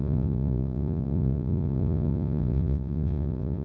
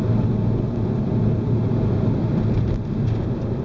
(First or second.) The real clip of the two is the second